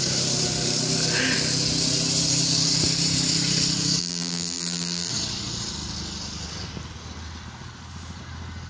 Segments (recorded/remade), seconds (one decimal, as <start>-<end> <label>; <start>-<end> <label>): 0.0-4.0 recorded; 4.0-5.1 remade; 5.1-8.7 recorded